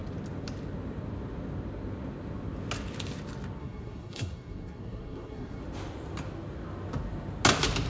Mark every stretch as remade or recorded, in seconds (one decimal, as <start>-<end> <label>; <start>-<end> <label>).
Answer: 0.0-3.6 recorded; 3.6-5.6 remade; 5.6-7.9 recorded